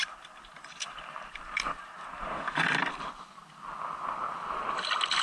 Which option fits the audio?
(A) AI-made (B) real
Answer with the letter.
B